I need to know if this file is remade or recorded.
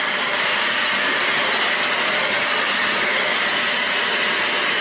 recorded